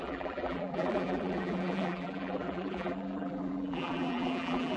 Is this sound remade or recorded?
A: remade